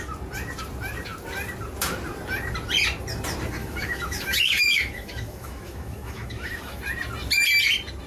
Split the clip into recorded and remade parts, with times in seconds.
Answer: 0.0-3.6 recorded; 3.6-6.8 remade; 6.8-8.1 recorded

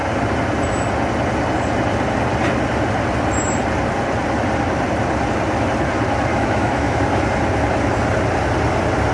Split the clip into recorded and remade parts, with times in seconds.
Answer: 0.0-6.3 recorded; 6.3-7.0 remade; 7.0-9.1 recorded